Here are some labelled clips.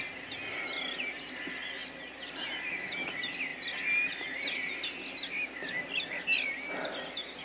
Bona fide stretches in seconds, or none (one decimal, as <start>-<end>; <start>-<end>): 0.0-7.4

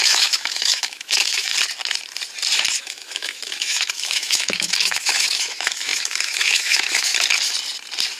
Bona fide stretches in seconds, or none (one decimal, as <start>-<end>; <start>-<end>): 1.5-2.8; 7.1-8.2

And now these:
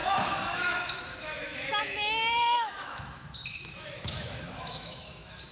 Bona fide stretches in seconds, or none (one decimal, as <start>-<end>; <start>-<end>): none

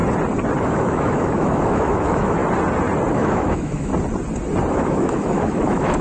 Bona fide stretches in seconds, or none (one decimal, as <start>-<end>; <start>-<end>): 0.0-0.6; 2.4-3.1; 3.9-4.7

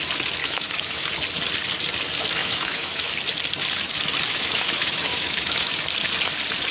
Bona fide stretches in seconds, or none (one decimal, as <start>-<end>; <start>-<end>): 0.0-0.4; 1.1-2.4; 3.1-4.3; 5.8-6.7

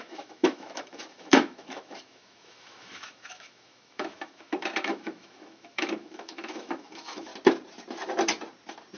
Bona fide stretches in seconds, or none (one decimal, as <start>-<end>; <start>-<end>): 7.3-9.0

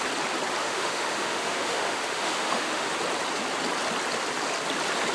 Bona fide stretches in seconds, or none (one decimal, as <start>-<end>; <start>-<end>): 0.0-0.6; 2.9-5.1

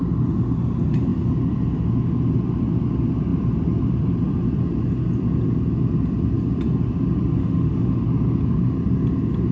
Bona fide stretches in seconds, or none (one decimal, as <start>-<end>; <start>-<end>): 0.0-7.4; 8.0-9.5